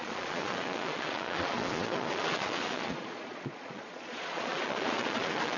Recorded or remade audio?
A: remade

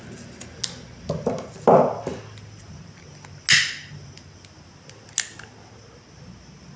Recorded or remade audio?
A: recorded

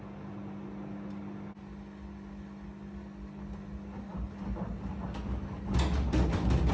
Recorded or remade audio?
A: recorded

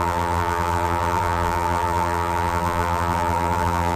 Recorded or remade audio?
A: remade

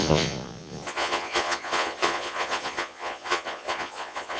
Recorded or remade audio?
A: remade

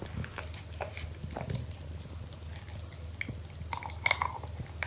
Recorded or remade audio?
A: recorded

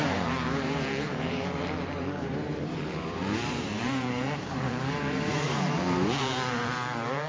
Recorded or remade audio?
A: remade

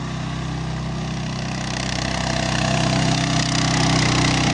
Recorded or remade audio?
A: recorded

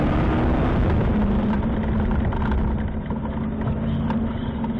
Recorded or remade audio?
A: recorded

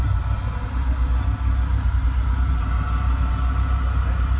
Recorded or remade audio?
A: recorded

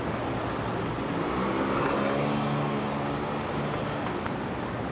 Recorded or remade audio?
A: recorded